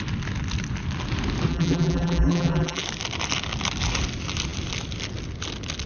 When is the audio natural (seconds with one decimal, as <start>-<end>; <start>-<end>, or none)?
0.0-1.5; 2.8-5.9